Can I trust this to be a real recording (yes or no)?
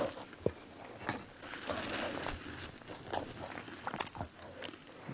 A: yes